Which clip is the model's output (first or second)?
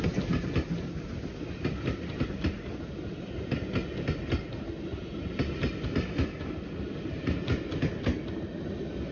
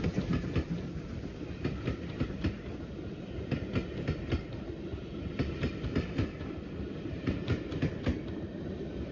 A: second